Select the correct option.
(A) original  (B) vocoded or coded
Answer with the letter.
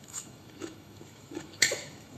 B